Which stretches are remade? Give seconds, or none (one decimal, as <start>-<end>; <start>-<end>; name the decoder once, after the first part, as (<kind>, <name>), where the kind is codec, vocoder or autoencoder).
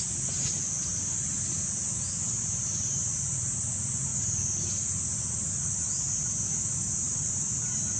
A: none